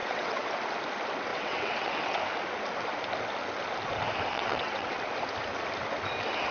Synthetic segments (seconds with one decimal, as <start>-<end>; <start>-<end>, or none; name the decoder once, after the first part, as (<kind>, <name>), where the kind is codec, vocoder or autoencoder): 0.0-0.5 (vocoder, WaveNeXt); 1.3-2.2; 4.3-4.9